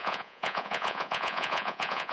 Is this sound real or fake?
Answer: fake